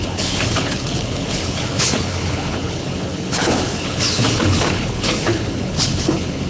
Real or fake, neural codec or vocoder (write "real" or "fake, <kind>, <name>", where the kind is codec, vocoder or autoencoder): fake, codec, HILCodec